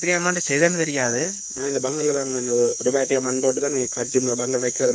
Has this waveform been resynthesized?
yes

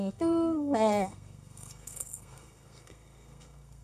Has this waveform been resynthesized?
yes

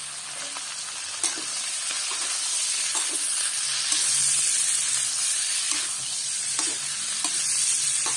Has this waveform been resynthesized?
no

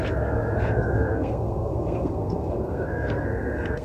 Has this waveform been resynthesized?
yes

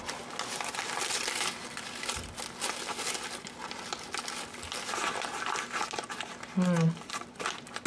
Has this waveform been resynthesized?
no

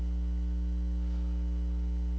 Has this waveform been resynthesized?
no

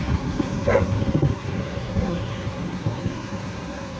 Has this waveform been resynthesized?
yes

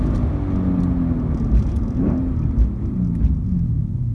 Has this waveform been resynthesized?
no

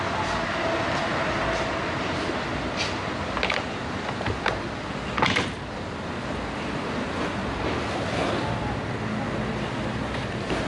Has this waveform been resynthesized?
no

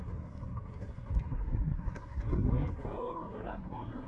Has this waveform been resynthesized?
yes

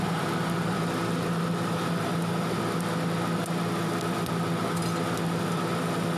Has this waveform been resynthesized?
no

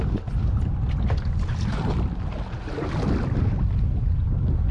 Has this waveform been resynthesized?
no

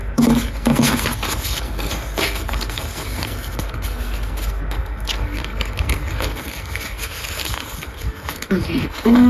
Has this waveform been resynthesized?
yes